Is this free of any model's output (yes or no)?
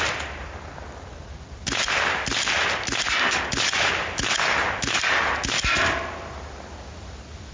yes